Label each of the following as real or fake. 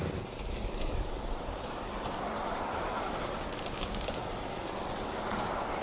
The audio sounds real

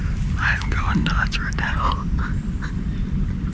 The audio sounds real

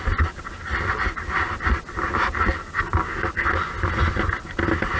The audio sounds real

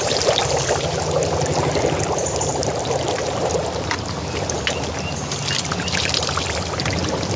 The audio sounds real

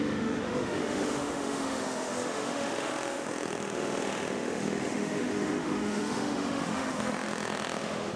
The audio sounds fake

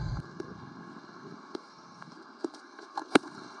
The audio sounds fake